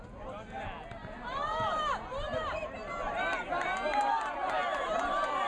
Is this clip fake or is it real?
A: real